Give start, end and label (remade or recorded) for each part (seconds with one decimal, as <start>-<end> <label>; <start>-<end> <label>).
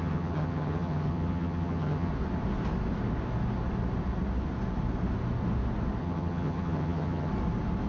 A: 0.0-2.1 remade; 2.1-6.0 recorded; 6.0-7.3 remade; 7.3-7.9 recorded